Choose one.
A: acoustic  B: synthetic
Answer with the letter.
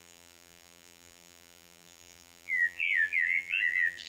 B